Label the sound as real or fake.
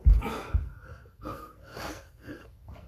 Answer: fake